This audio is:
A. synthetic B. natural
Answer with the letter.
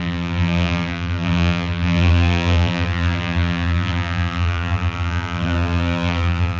A